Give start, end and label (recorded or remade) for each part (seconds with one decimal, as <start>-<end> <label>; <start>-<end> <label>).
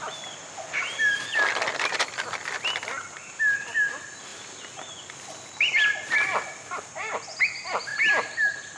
0.0-4.3 recorded; 4.3-7.4 remade; 7.4-8.8 recorded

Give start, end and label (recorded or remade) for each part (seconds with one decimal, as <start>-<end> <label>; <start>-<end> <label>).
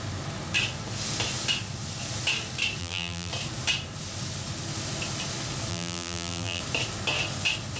0.0-2.8 recorded; 2.8-3.3 remade; 3.3-5.7 recorded; 5.7-6.6 remade; 6.6-7.8 recorded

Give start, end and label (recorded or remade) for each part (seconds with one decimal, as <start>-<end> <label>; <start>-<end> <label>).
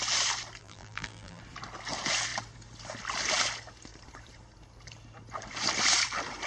0.0-0.6 recorded; 0.6-1.4 remade; 1.4-6.5 recorded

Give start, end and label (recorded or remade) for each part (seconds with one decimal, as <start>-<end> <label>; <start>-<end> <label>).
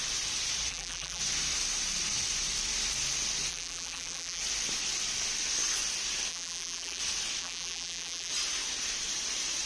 0.0-0.7 recorded; 0.7-1.2 remade; 1.2-3.5 recorded; 3.5-4.4 remade; 4.4-6.3 recorded; 6.3-7.0 remade; 7.0-7.4 recorded; 7.4-8.3 remade; 8.3-9.7 recorded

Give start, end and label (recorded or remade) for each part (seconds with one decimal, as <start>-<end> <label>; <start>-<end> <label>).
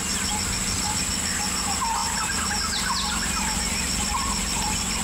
0.0-5.0 recorded